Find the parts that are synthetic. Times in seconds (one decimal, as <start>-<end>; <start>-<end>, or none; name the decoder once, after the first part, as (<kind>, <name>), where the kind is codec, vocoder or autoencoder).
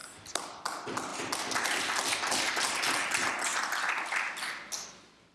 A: none